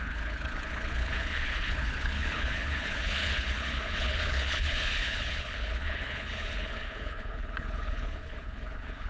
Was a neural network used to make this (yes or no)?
yes